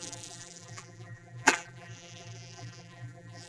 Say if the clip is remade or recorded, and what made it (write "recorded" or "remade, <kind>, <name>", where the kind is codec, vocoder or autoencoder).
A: remade, vocoder, BigVGAN v2